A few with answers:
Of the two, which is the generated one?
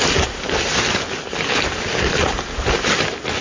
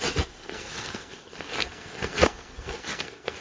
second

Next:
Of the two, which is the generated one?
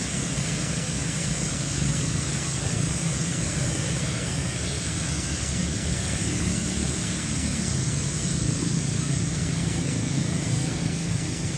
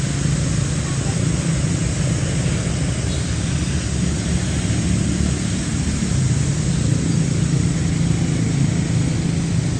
first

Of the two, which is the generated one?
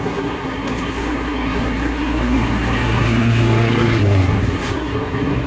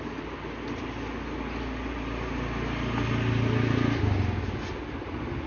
first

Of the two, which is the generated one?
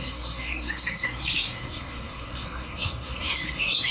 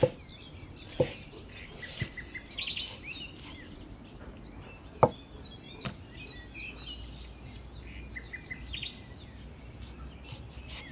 first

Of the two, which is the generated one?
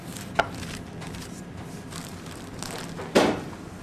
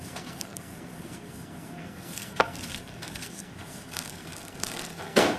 second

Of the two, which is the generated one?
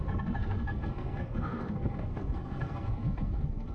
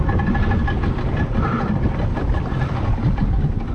first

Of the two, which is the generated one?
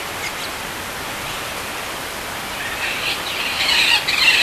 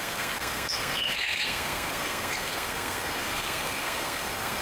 second